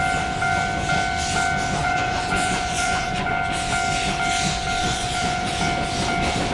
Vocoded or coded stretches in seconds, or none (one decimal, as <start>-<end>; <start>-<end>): 1.8-3.3; 4.8-5.5